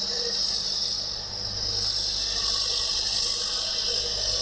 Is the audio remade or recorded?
recorded